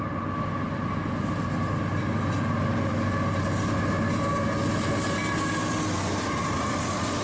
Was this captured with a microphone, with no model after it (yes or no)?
yes